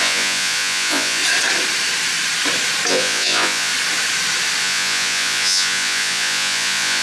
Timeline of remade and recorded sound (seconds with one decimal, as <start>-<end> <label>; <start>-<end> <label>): 0.0-1.2 remade; 1.2-2.9 recorded; 2.9-3.7 remade; 3.7-4.6 recorded; 4.6-7.0 remade